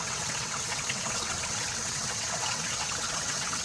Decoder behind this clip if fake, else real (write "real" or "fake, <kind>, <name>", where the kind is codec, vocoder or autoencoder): fake, vocoder, WaveNeXt